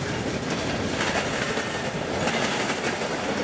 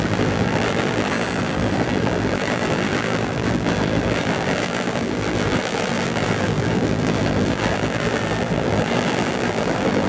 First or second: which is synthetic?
second